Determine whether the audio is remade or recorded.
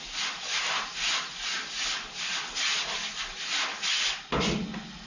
recorded